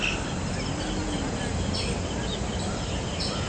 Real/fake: real